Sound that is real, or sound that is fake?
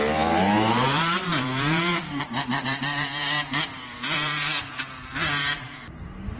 fake